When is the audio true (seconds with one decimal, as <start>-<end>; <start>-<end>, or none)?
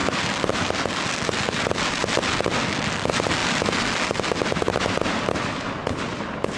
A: 0.0-6.6